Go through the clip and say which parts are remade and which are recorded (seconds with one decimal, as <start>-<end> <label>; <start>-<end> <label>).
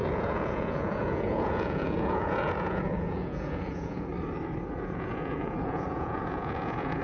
0.0-4.1 remade; 4.1-4.8 recorded; 4.8-7.0 remade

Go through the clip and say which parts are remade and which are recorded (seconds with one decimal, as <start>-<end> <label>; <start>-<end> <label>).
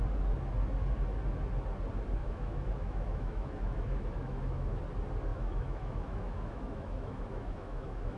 0.0-2.2 recorded; 2.2-4.8 remade; 4.8-5.3 recorded; 5.3-8.2 remade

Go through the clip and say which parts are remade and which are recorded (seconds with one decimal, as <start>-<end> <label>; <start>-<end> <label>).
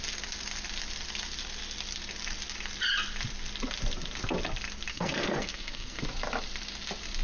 0.0-4.9 recorded; 4.9-6.0 remade; 6.0-7.2 recorded